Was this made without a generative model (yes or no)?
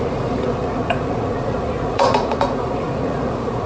no